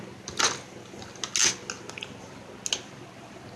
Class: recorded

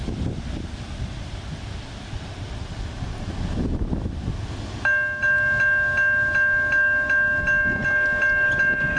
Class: recorded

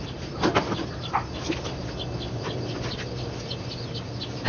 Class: recorded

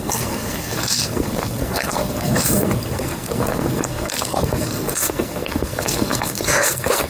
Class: remade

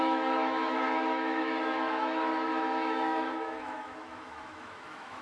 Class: remade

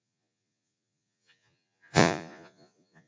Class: remade